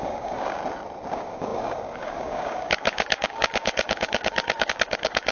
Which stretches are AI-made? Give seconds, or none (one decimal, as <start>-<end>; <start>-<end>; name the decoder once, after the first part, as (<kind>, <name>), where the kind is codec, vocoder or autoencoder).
0.0-0.6 (codec, DAC); 1.1-5.3